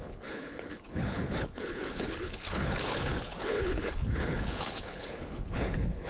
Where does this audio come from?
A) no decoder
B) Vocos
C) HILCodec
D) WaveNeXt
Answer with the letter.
C